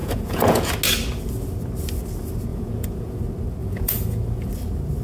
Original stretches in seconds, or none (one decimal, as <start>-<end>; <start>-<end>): 0.7-2.5; 3.2-3.6; 4.5-5.0